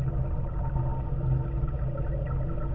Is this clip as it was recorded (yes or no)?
yes